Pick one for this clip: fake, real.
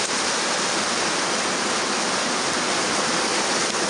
real